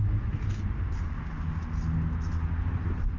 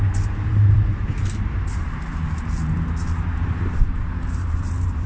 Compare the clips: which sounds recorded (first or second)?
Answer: first